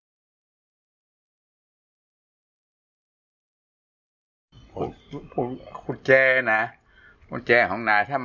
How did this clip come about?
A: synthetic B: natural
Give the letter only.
B